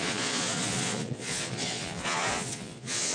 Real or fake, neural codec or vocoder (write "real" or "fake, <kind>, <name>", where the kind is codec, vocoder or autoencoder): fake, vocoder, Vocos